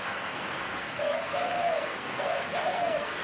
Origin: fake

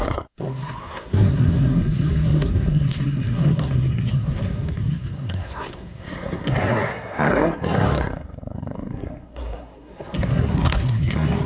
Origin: fake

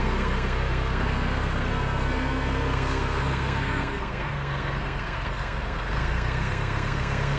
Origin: fake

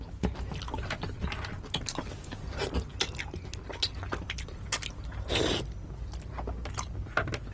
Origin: real